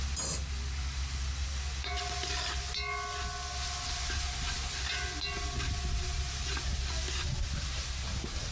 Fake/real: real